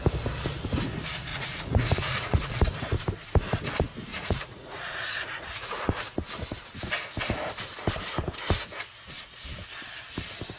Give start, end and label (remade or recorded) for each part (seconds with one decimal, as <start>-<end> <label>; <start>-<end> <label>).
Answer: 0.0-1.3 recorded; 1.3-2.6 remade; 2.6-4.1 recorded; 4.1-5.9 remade; 5.9-10.6 recorded